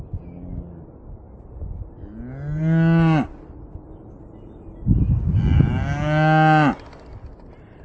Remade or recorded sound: recorded